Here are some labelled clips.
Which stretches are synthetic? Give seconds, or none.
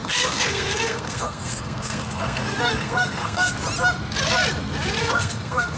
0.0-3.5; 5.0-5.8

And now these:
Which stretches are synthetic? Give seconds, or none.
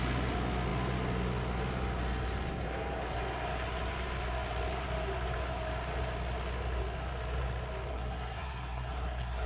7.9-9.5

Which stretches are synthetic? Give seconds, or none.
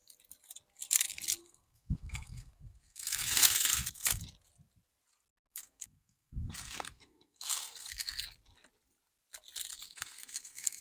1.4-4.2; 5.5-8.2; 9.7-10.8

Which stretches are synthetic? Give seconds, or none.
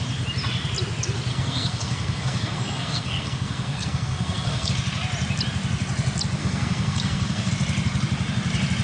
1.3-4.7; 6.4-7.5